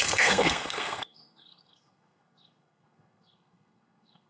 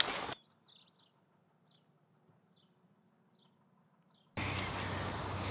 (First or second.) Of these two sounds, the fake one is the first